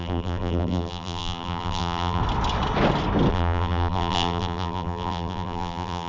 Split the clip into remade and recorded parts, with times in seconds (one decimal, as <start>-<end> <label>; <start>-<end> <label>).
0.0-2.2 remade; 2.2-3.3 recorded; 3.3-6.1 remade